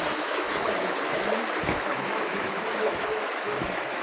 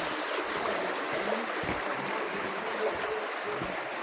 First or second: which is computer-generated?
first